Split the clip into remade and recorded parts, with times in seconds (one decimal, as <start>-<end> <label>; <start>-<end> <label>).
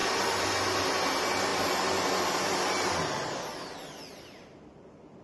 0.0-5.2 recorded